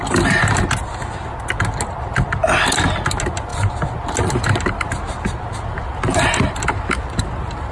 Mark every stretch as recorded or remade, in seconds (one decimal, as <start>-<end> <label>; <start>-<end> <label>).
0.0-7.7 recorded